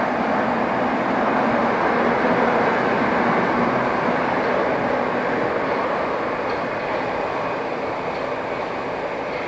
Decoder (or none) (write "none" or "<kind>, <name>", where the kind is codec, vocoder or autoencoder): none